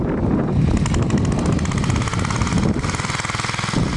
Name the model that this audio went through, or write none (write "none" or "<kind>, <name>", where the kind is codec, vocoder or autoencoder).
none